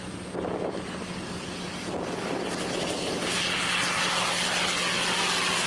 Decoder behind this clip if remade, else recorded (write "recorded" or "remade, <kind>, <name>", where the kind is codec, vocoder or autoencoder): recorded